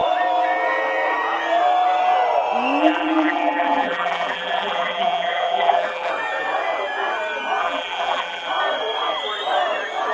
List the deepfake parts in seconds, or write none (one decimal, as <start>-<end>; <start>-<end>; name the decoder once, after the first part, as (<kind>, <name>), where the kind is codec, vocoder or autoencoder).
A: 2.8-6.1 (vocoder, BigVGAN v2); 7.6-8.5